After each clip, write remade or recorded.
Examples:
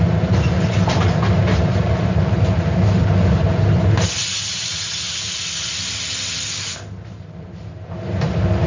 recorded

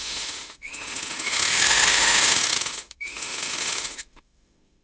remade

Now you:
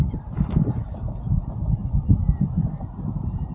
remade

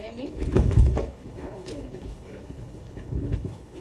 remade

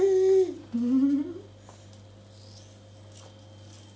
recorded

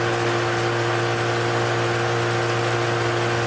recorded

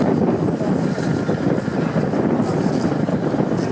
recorded